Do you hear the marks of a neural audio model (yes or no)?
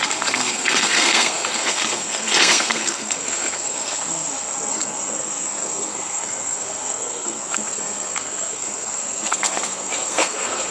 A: yes